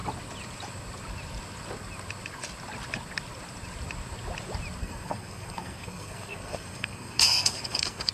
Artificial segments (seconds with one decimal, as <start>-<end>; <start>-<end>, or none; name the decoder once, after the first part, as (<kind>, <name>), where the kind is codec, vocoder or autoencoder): 4.8-8.1 (codec, SNAC)